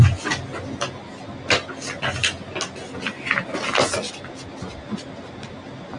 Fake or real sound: real